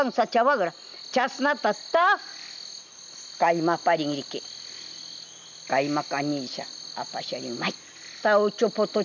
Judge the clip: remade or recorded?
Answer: recorded